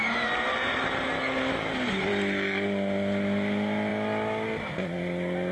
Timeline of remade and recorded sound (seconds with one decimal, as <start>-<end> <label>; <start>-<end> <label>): 0.0-5.5 recorded